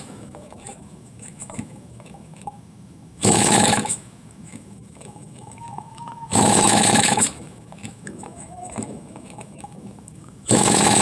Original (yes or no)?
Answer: no